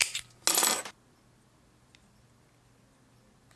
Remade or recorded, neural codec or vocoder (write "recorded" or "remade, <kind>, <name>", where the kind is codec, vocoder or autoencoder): recorded